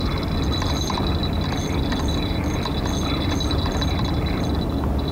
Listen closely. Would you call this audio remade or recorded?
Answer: recorded